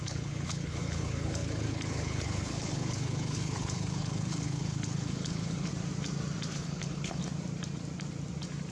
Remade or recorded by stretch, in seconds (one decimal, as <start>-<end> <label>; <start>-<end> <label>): 0.0-5.7 remade; 5.7-6.6 recorded; 6.6-7.2 remade; 7.2-8.7 recorded